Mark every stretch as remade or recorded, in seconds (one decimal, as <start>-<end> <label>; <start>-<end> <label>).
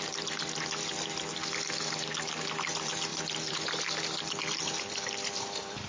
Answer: 0.0-3.1 recorded; 3.1-3.7 remade; 3.7-5.9 recorded